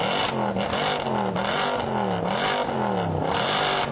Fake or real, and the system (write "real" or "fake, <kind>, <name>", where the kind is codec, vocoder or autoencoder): real